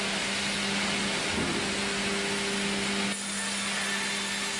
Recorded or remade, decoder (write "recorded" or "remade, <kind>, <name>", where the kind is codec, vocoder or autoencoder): recorded